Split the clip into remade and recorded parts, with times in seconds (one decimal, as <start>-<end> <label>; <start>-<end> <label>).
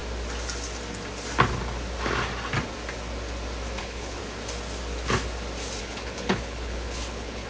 0.0-3.8 recorded; 3.8-4.2 remade; 4.2-5.8 recorded; 5.8-7.5 remade